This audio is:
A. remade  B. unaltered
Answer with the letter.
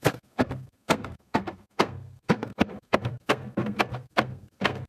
A